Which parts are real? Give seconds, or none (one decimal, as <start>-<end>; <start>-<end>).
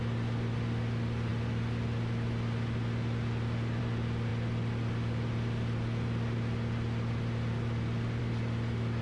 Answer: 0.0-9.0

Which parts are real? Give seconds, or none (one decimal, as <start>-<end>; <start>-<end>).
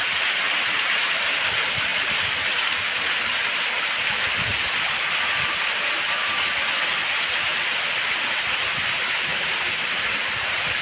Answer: 1.9-4.0; 4.5-7.3; 9.3-9.9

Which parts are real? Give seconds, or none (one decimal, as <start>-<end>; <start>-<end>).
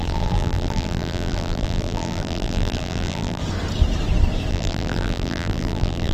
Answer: 3.4-4.5